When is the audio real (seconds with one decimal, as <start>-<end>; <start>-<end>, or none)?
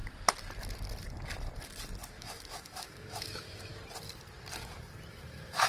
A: 0.0-2.1; 3.7-5.1